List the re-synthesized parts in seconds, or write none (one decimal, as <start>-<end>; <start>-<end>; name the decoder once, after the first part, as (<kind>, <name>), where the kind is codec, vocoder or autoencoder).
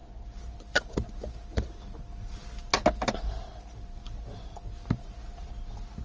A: none